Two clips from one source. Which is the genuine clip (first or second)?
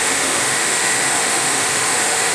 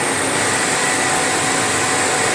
second